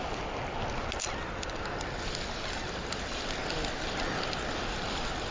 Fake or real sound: real